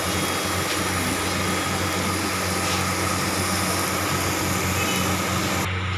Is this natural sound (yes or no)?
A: yes